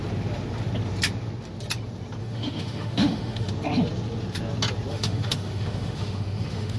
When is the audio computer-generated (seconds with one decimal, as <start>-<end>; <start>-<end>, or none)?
2.2-3.5; 4.9-6.8